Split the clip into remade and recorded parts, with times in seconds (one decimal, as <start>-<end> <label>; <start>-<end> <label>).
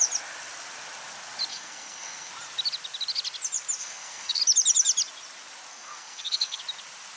0.0-1.5 recorded; 1.5-2.3 remade; 2.3-3.8 recorded; 3.8-4.4 remade; 4.4-5.7 recorded; 5.7-6.6 remade; 6.6-7.2 recorded